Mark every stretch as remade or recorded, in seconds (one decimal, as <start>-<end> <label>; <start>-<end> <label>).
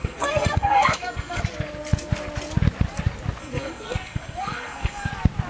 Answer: 0.0-1.4 remade; 1.4-3.4 recorded; 3.4-5.1 remade; 5.1-5.5 recorded